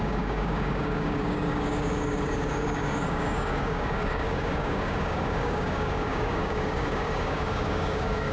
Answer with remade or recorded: remade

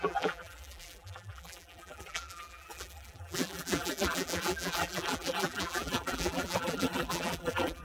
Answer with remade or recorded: remade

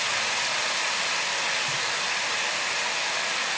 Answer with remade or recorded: recorded